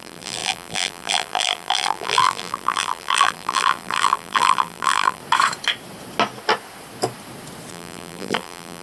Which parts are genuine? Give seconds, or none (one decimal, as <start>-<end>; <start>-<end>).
5.2-7.7